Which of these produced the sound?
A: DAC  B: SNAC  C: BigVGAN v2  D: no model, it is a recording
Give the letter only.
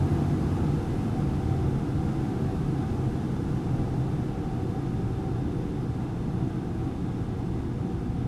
D